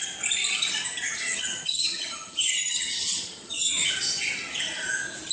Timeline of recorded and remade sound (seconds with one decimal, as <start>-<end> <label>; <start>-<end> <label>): 0.0-1.2 recorded; 1.2-3.9 remade; 3.9-5.3 recorded